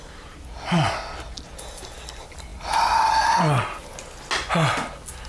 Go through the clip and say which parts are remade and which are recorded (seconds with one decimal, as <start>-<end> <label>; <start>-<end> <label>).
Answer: 0.0-5.3 recorded